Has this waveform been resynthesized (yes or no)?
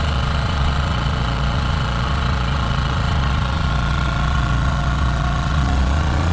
yes